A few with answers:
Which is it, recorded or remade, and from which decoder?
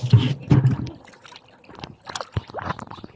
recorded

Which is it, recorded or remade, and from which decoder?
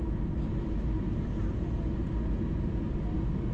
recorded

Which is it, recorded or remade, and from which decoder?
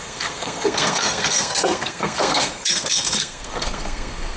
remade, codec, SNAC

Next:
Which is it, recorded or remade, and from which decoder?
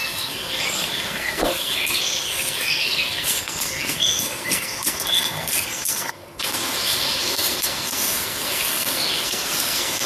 remade, codec, SNAC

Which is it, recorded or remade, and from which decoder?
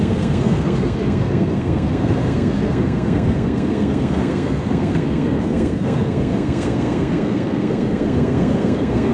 remade, codec, SNAC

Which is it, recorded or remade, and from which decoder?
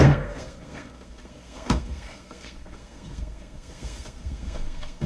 remade, codec, SNAC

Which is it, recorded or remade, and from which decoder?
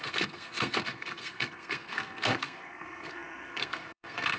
remade, codec, SNAC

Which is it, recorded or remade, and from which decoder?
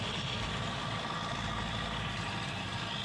recorded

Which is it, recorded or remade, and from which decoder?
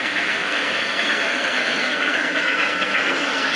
remade, codec, SNAC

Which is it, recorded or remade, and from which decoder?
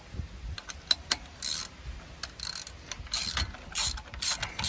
recorded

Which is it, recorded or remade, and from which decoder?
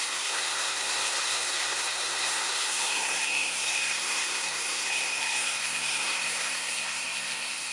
remade, codec, SNAC